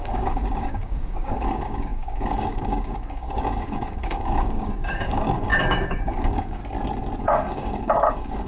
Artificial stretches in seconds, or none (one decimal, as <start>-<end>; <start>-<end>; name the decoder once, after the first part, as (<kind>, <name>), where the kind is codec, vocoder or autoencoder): 0.0-6.6 (codec, DAC); 7.2-8.5